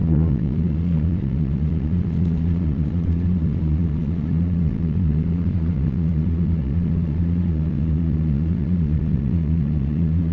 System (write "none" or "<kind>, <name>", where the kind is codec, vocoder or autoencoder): vocoder, Vocos